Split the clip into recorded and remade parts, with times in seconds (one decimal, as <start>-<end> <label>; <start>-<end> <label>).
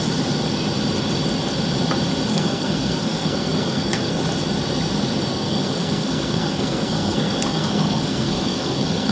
0.0-2.3 recorded; 2.3-4.2 remade; 4.2-5.3 recorded; 5.3-9.1 remade